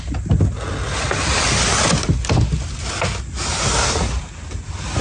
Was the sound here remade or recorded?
recorded